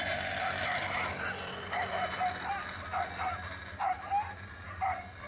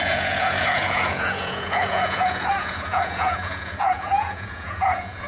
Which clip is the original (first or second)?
first